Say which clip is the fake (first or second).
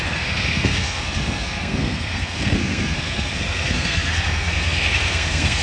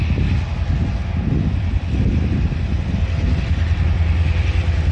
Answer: first